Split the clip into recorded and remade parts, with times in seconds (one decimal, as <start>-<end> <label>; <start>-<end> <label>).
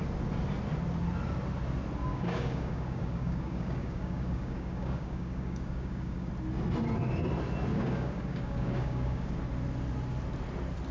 0.0-2.1 recorded; 2.1-6.3 remade; 6.3-7.7 recorded; 7.7-9.4 remade; 9.4-10.9 recorded